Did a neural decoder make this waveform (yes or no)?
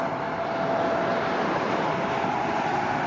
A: no